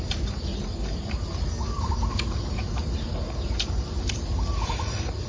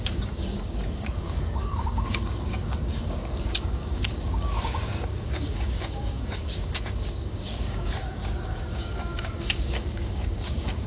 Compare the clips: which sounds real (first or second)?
first